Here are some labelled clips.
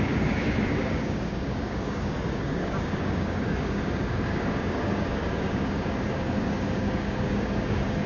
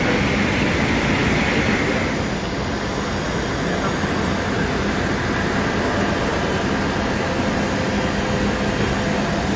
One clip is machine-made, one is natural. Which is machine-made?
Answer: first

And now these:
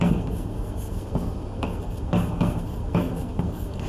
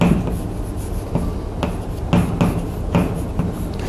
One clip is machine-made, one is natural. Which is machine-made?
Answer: first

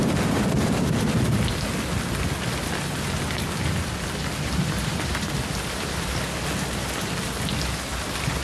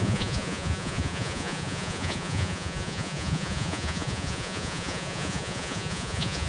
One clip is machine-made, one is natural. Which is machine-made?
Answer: second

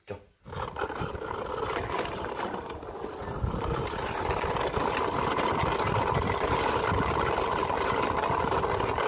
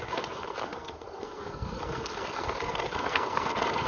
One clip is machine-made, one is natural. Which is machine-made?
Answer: second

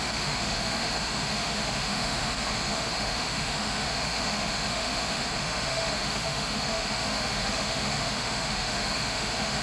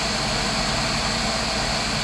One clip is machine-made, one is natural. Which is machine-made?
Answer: first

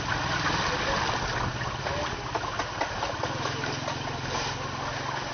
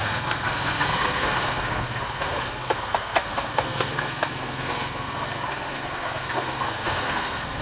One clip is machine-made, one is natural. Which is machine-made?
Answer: second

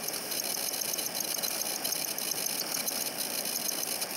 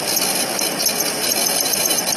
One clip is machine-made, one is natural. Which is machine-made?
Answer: first